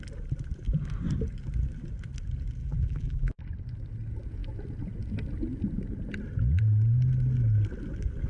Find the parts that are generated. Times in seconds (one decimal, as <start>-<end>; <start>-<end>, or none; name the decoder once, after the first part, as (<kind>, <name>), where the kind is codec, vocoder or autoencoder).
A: 2.6-3.3 (vocoder, BigVGAN v2)